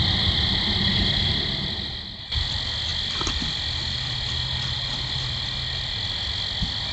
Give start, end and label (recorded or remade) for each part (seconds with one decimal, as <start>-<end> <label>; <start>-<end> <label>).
0.0-6.9 recorded